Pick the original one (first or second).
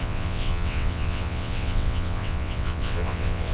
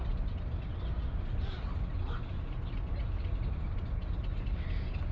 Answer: second